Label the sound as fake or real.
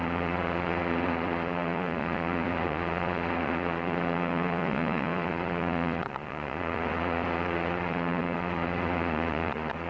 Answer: fake